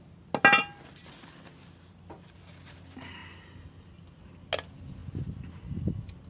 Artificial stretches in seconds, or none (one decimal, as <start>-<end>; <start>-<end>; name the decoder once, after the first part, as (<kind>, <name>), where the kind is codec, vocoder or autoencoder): none